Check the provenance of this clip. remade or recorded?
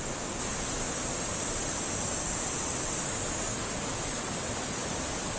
recorded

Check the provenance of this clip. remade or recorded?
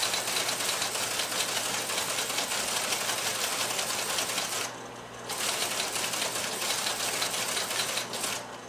recorded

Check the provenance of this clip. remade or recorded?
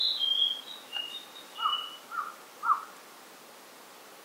recorded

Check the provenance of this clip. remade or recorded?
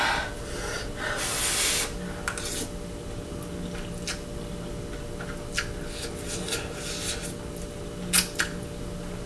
recorded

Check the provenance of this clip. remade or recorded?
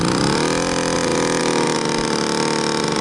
recorded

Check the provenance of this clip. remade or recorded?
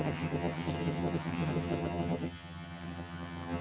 remade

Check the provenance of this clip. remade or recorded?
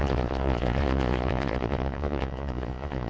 remade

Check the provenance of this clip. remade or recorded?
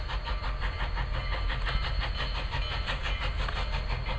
recorded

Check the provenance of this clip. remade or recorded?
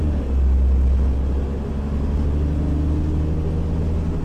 recorded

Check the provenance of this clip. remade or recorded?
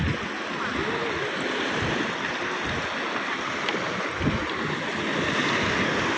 recorded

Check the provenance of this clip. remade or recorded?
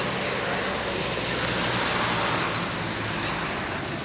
recorded